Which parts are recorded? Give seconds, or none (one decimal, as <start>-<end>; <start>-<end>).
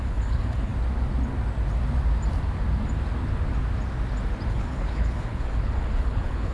0.7-4.5